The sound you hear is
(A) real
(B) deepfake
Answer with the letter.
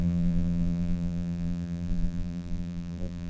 B